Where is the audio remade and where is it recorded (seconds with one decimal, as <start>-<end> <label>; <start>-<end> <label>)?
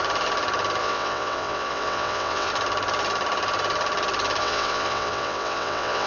0.0-0.8 recorded; 0.8-2.5 remade; 2.5-4.4 recorded; 4.4-6.1 remade